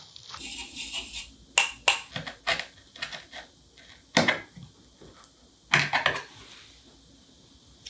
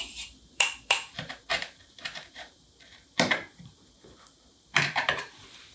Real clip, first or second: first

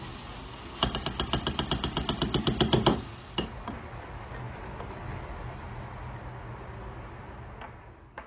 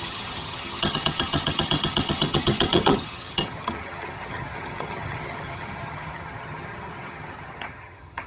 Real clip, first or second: first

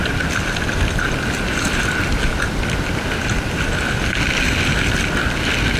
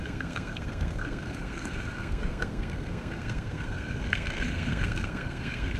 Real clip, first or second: first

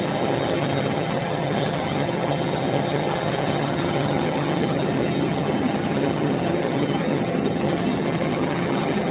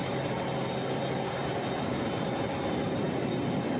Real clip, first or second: second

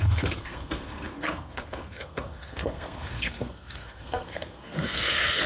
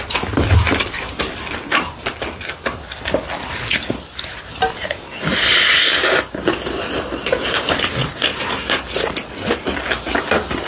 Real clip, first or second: second